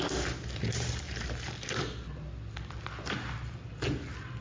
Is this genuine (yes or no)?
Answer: yes